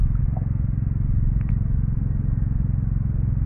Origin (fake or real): real